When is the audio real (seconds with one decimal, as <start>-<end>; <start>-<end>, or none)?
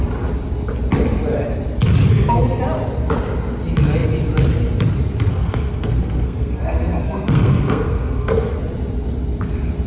0.0-2.1; 2.6-5.3; 8.6-9.9